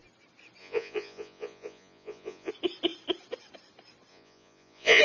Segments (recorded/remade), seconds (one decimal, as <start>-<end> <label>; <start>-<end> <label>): 0.0-0.6 recorded; 0.6-2.5 remade; 2.5-4.1 recorded; 4.1-5.0 remade